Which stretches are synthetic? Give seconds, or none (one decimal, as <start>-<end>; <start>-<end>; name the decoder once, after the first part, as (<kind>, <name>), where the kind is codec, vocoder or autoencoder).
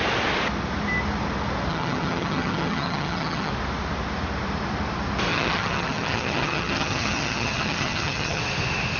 1.7-3.5 (vocoder, HiFi-GAN); 5.3-8.4